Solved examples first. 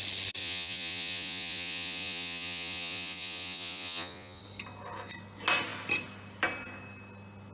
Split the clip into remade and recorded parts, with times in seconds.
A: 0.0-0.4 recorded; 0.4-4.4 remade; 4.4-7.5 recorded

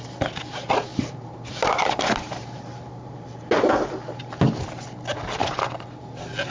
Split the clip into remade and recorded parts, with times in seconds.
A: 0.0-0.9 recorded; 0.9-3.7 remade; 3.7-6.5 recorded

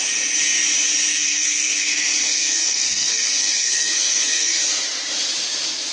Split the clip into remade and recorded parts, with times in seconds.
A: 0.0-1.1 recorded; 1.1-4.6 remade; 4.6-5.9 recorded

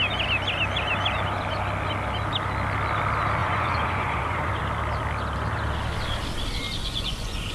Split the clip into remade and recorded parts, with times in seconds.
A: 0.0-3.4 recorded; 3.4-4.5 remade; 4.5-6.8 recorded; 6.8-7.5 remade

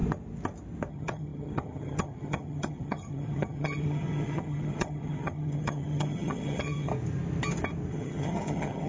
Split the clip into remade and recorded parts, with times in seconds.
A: 0.0-0.9 recorded; 0.9-6.9 remade; 6.9-7.9 recorded; 7.9-8.9 remade

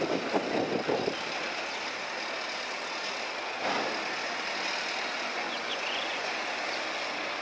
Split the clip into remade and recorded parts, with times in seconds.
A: 0.0-5.3 recorded; 5.3-6.3 remade; 6.3-7.4 recorded

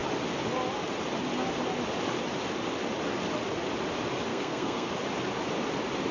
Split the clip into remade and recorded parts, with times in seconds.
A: 0.0-4.3 recorded; 4.3-4.9 remade; 4.9-6.1 recorded